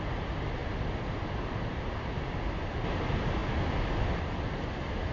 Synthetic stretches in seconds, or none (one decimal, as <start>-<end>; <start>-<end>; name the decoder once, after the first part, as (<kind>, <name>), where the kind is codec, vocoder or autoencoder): none